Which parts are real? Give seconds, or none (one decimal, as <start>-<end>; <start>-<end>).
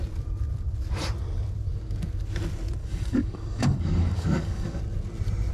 0.0-2.8; 4.8-5.5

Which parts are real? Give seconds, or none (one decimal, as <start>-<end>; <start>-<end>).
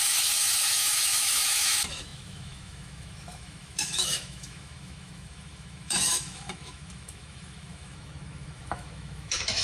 none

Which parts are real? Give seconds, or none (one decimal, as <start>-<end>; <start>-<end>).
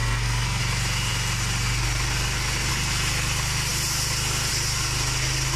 0.6-5.6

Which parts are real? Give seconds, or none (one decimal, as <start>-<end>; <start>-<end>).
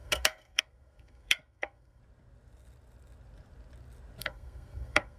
2.0-4.2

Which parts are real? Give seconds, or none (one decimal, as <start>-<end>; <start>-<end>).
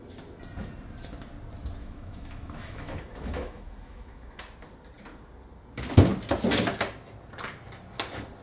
0.0-1.8; 4.4-8.4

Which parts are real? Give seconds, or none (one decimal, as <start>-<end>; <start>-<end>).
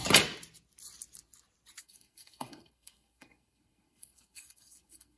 0.0-1.8